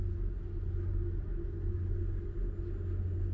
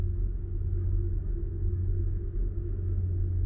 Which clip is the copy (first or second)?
second